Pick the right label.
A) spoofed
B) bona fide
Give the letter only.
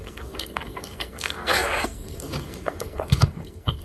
A